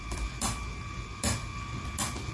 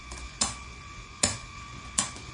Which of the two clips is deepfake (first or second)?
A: second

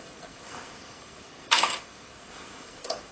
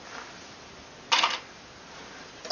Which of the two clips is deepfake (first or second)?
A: first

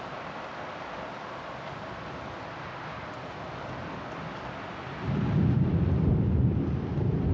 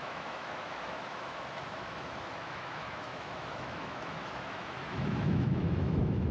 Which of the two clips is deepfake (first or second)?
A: second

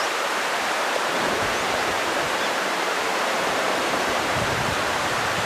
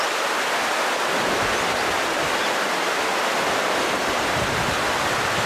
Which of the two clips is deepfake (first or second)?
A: first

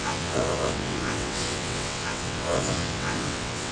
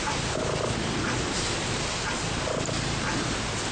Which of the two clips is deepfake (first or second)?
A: first